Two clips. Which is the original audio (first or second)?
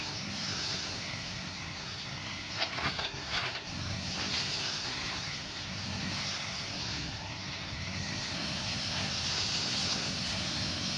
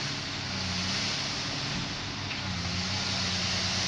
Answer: second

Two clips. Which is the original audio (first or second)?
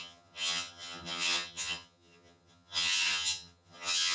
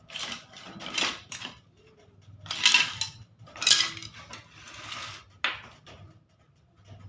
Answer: second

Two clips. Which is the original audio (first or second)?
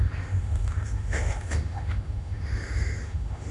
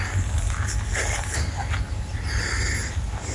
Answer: second